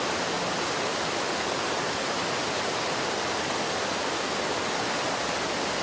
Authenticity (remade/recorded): recorded